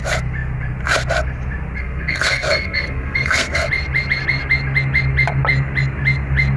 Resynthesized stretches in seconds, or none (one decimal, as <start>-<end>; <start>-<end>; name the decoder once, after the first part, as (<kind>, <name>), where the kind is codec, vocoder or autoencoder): 1.8-3.7 (codec, SNAC)